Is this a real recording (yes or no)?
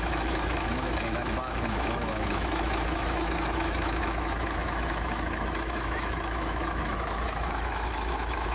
no